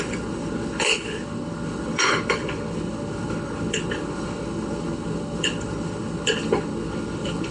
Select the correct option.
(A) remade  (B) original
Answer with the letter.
A